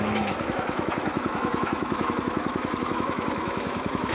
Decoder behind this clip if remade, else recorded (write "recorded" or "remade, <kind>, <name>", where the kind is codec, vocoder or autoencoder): remade, autoencoder, DAC-VAE